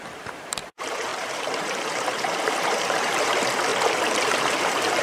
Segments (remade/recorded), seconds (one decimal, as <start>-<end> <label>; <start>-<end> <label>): 0.0-3.7 remade; 3.7-4.2 recorded; 4.2-5.0 remade